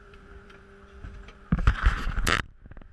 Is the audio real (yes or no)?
no